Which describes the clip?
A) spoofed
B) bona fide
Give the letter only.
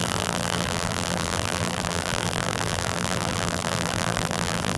A